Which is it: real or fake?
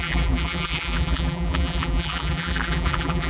fake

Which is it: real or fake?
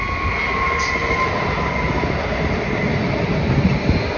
real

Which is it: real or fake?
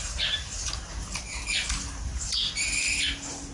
real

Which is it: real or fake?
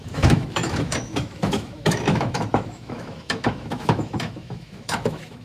fake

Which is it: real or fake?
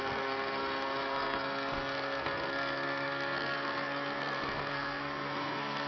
fake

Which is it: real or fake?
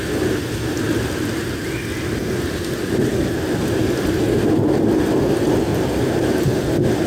real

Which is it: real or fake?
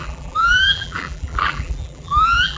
fake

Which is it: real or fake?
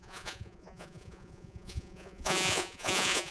fake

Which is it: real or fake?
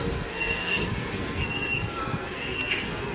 fake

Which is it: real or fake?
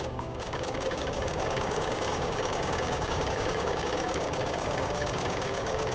fake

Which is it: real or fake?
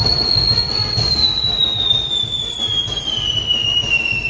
real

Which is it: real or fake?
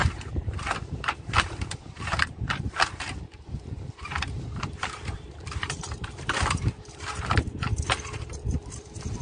fake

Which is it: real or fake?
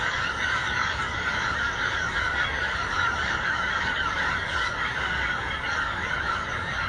fake